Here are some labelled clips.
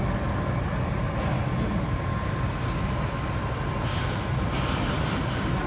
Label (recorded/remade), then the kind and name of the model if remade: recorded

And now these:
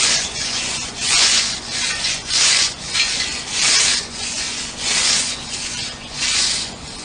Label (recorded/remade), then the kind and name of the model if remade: remade, vocoder, Vocos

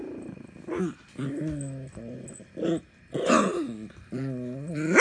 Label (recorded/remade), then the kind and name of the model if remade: recorded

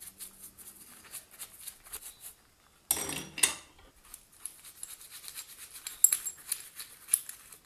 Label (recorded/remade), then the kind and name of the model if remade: recorded